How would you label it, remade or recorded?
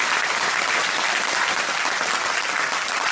recorded